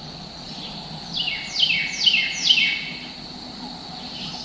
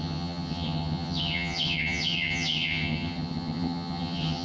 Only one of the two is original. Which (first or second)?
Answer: first